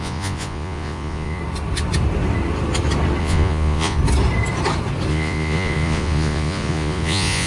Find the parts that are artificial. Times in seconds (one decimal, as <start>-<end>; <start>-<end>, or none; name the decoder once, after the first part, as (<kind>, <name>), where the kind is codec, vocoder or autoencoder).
0.0-1.4 (vocoder, Vocos); 3.2-4.0; 5.1-7.5